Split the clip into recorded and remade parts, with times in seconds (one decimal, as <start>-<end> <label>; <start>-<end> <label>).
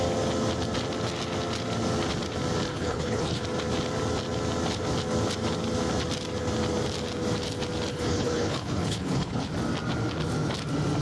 0.0-2.7 recorded; 2.7-3.4 remade; 3.4-7.9 recorded; 7.9-9.5 remade; 9.5-11.0 recorded